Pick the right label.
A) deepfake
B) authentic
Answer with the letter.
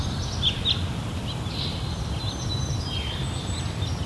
B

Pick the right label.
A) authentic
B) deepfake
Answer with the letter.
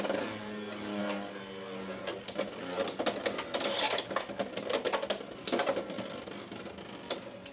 A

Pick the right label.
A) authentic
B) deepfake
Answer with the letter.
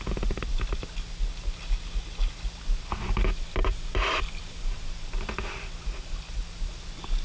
A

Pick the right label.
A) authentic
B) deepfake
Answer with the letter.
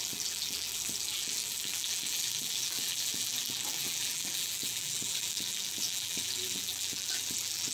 B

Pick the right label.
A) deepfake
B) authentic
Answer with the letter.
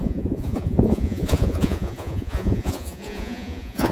A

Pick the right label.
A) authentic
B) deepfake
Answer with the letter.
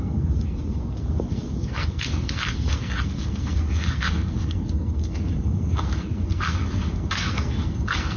B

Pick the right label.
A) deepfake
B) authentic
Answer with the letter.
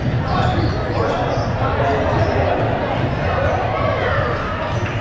B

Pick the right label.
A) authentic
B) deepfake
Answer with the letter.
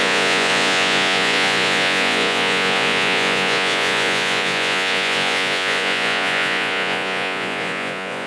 B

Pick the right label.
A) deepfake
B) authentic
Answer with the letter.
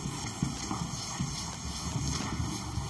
B